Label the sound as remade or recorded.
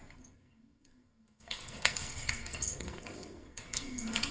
remade